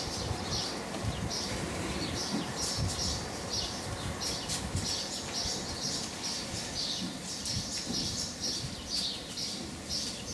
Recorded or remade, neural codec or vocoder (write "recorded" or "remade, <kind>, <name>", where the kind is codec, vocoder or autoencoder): remade, vocoder, BigVGAN v2